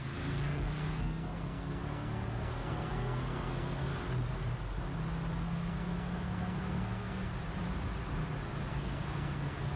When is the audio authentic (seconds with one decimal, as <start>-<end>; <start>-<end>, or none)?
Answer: 3.9-5.3; 7.3-8.7